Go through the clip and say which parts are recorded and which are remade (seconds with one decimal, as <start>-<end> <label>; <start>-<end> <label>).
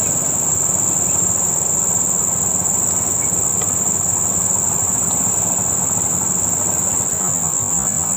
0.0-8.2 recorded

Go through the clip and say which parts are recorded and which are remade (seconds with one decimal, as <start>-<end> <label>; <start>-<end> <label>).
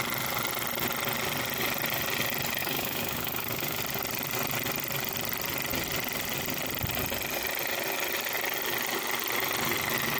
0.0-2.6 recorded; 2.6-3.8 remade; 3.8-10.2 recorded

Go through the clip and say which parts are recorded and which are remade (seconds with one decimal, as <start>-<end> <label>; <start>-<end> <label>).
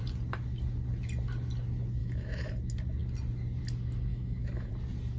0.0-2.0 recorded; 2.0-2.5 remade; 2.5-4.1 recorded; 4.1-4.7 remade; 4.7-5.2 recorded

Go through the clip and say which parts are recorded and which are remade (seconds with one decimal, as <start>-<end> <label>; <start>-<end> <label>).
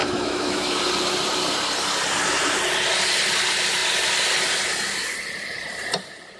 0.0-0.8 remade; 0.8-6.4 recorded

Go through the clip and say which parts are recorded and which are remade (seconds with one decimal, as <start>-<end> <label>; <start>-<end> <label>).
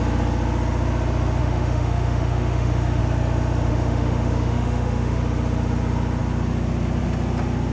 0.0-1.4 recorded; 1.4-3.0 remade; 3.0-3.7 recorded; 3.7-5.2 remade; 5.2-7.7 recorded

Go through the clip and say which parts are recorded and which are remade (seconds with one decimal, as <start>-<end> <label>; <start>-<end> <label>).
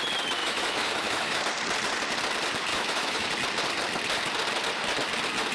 0.0-0.4 recorded; 0.4-1.4 remade; 1.4-2.7 recorded; 2.7-3.3 remade; 3.3-5.5 recorded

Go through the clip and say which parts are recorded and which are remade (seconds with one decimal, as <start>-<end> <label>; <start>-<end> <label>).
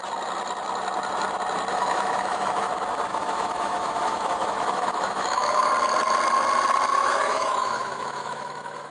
0.0-1.7 recorded; 1.7-2.7 remade; 2.7-3.1 recorded; 3.1-5.7 remade; 5.7-6.9 recorded; 6.9-8.9 remade